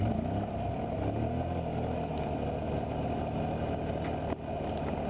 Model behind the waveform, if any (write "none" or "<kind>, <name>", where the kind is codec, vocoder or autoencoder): none